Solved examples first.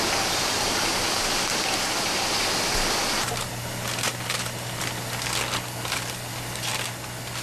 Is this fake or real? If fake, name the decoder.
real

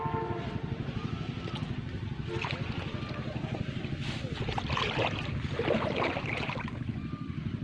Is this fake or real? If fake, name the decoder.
real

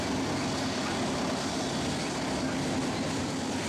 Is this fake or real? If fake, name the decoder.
real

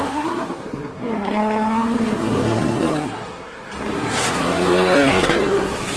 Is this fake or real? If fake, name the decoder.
fake, codec, SNAC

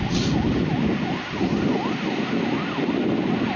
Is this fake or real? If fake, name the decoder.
real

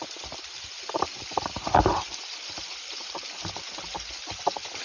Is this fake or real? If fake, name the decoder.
real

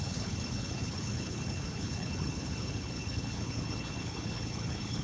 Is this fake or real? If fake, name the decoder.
fake, codec, HILCodec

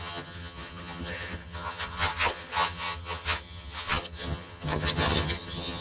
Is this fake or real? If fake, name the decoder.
fake, vocoder, HiFi-GAN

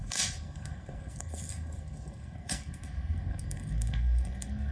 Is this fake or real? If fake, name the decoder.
fake, codec, SNAC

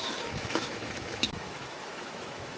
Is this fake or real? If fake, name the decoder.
fake, autoencoder, DAC-VAE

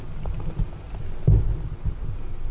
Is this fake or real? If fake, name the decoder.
real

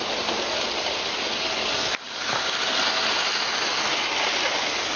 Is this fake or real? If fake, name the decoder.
real